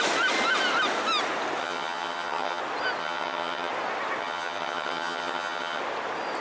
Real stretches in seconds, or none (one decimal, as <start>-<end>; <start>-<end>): 0.0-1.6; 2.6-3.0; 3.7-4.2; 5.8-6.4